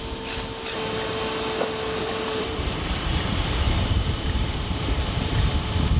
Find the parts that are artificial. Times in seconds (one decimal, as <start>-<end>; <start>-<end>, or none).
2.0-5.5